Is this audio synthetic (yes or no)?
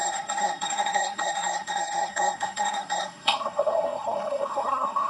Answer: yes